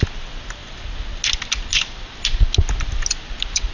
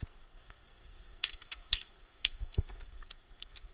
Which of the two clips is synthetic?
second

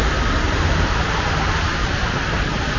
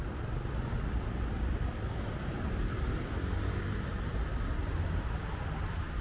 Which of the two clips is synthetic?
second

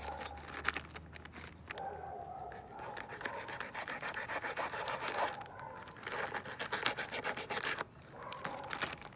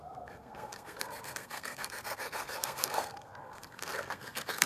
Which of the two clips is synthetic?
second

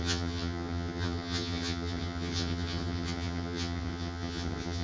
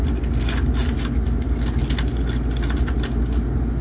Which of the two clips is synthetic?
first